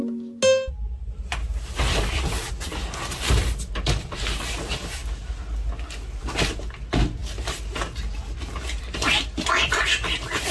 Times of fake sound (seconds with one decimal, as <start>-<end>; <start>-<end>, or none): none